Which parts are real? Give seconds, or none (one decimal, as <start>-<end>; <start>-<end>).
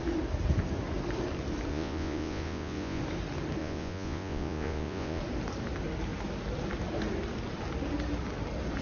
0.0-1.7; 3.0-3.6; 5.2-8.8